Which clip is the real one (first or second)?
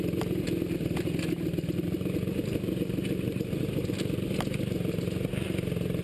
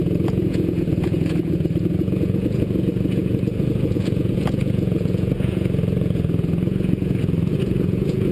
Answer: first